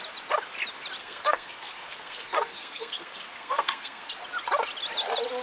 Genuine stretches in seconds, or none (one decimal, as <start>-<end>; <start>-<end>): 0.0-1.0; 4.1-5.4

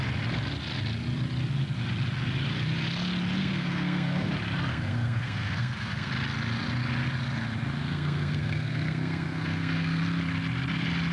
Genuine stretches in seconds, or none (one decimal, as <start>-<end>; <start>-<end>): 0.0-3.4; 4.3-4.7; 6.1-7.8; 10.0-11.1

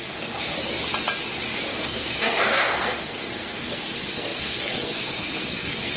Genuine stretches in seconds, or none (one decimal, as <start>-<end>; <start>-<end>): 0.5-1.8

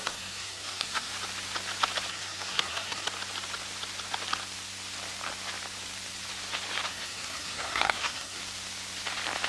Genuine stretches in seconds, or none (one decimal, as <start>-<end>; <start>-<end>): 1.1-2.1; 3.1-6.9; 8.4-9.5

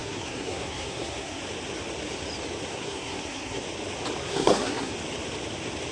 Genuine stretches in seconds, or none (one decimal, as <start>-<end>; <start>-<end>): 1.4-2.7; 3.6-4.2; 4.9-5.9

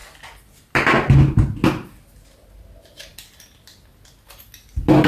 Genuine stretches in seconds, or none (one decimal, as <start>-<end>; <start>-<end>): 0.0-5.1

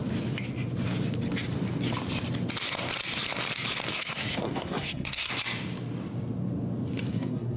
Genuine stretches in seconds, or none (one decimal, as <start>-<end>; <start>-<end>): 0.0-3.9; 5.3-7.1